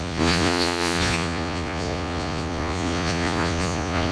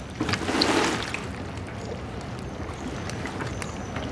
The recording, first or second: second